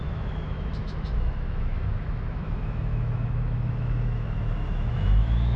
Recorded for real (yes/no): no